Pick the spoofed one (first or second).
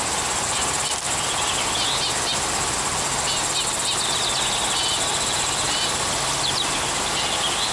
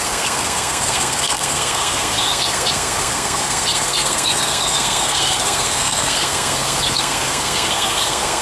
second